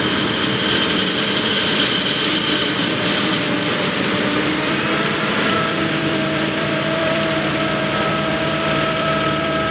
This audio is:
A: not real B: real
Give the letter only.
A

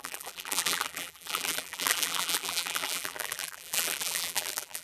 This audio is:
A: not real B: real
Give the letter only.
A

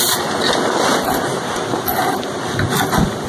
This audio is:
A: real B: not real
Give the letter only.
A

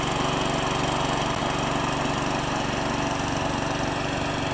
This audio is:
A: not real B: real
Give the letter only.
B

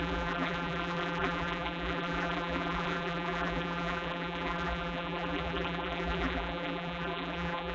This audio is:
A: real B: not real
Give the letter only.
B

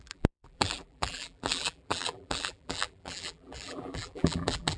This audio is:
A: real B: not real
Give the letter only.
B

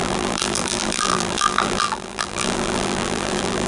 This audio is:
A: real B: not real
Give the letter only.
B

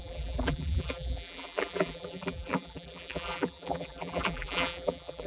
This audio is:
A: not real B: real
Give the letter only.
A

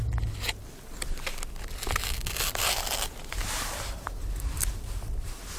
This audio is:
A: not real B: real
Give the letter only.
B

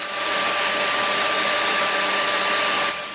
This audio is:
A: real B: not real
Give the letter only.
A